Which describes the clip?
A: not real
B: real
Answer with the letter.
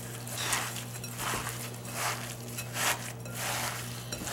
B